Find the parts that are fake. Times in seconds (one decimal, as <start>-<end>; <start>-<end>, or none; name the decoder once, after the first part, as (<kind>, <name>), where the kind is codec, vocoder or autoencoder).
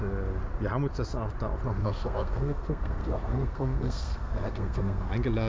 1.8-5.1 (codec, SNAC)